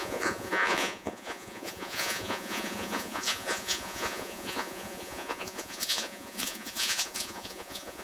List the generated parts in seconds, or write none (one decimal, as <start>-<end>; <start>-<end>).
0.0-8.0